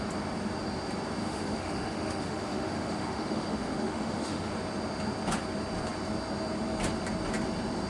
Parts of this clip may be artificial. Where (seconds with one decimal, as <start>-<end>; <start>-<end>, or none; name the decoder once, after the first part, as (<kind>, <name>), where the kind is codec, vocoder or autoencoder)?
1.2-4.5 (autoencoder, DAC-VAE)